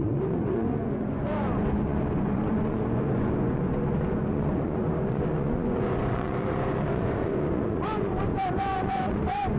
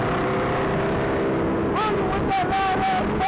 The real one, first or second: second